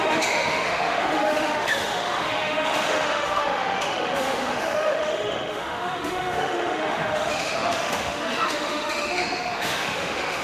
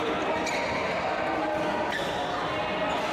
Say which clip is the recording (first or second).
second